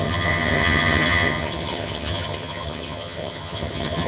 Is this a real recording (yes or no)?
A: no